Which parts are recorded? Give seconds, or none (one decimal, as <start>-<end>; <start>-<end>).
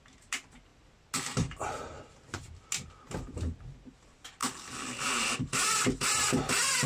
0.0-6.9